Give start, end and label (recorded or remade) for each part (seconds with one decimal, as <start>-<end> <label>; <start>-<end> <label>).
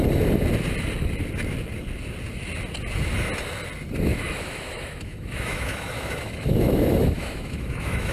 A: 0.0-4.1 recorded; 4.1-8.1 remade